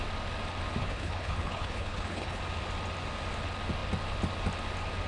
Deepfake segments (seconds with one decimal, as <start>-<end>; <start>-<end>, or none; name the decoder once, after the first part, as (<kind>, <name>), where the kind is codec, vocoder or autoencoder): 0.8-2.4 (codec, HILCodec)

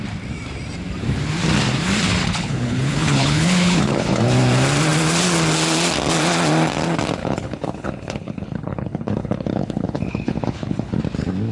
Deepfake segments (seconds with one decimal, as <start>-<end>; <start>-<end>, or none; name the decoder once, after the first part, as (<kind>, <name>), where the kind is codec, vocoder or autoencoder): 2.2-4.2 (codec, HILCodec); 7.2-11.0

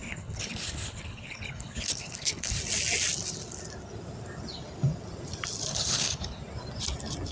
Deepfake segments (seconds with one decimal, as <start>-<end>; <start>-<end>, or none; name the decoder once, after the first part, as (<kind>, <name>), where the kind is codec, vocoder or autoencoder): 0.0-2.6 (codec, HILCodec); 5.7-6.4

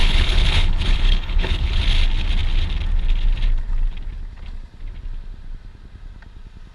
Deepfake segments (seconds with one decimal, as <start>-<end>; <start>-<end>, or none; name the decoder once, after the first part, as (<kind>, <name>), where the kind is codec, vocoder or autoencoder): 0.0-1.8 (codec, HILCodec)

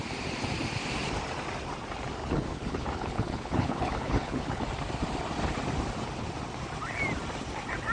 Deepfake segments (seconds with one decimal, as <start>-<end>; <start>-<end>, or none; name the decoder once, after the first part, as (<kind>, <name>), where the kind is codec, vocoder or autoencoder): 2.2-4.6 (codec, HILCodec)

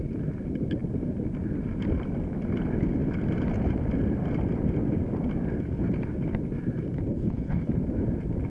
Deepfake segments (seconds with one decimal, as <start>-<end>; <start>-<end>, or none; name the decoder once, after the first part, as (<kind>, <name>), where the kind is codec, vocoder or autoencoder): 7.1-7.7 (codec, HILCodec)

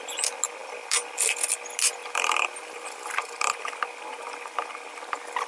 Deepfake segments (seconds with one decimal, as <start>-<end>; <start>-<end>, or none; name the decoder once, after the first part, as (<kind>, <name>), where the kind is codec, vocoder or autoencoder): none